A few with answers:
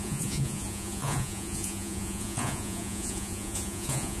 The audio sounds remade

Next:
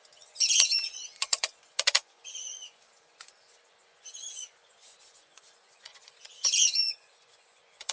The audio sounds remade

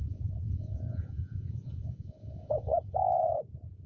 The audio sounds remade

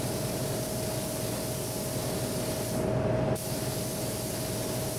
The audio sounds recorded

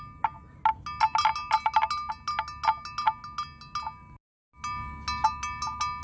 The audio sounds recorded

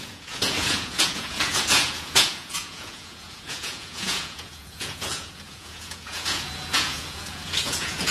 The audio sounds remade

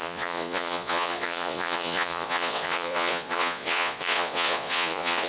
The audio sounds remade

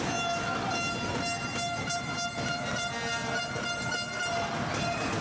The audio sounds recorded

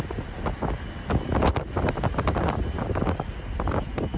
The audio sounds recorded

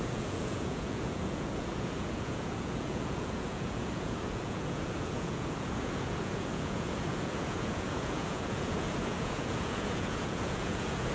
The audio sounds remade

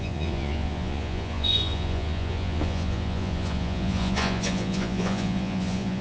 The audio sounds remade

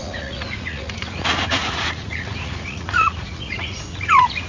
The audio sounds remade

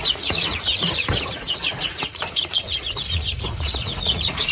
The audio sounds remade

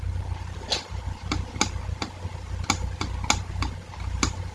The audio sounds recorded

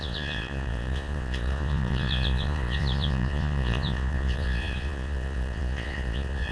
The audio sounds remade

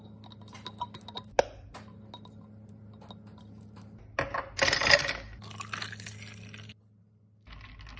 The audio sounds recorded